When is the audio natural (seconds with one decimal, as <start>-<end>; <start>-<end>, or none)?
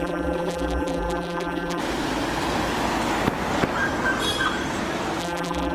1.8-5.2